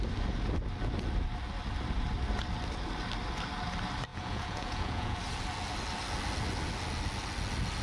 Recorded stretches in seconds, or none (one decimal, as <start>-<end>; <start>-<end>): 0.0-4.1; 5.2-7.8